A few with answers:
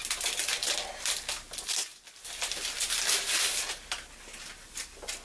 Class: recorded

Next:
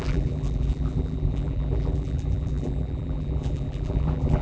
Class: remade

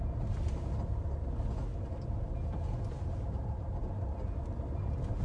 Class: recorded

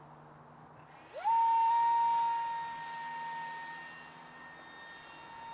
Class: recorded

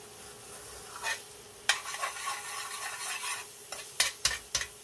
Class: recorded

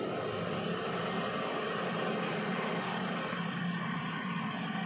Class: remade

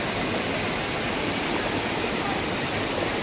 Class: recorded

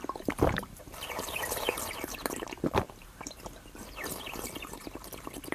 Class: remade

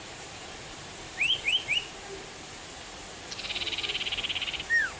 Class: remade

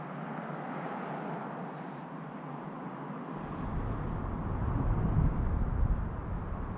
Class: recorded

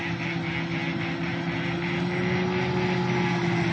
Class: recorded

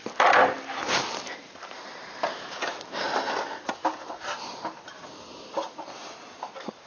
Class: recorded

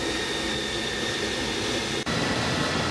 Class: recorded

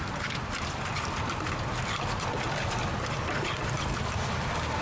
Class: recorded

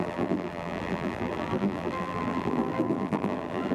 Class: remade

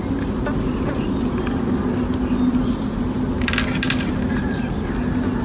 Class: recorded